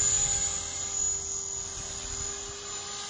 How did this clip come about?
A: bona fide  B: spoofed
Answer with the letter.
A